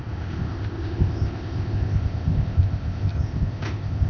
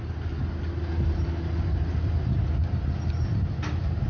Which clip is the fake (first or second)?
first